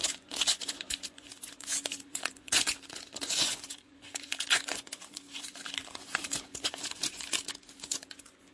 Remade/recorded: remade